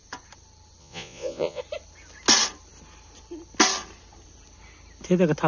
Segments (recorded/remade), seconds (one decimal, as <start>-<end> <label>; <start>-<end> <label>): 0.0-0.8 recorded; 0.8-1.6 remade; 1.6-5.5 recorded